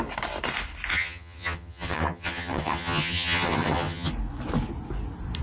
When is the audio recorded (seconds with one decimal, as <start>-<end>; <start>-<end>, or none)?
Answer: 0.0-0.9; 4.1-5.4